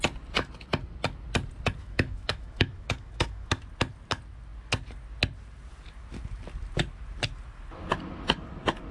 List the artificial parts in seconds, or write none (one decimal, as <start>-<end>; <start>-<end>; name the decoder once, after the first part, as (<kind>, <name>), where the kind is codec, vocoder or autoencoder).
1.8-3.6 (autoencoder, DAC-VAE)